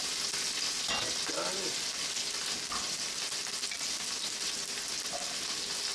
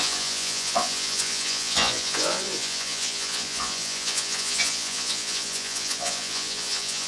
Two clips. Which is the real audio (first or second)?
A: first